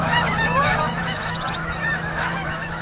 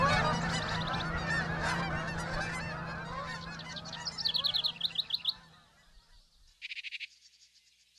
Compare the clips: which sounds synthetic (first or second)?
first